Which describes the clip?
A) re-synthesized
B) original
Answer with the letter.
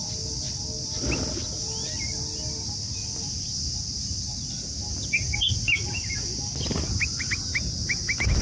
B